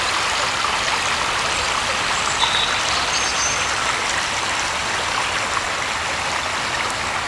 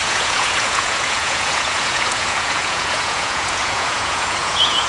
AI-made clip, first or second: second